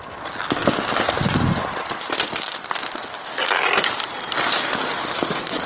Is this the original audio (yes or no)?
yes